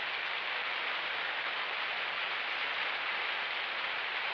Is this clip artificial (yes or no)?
no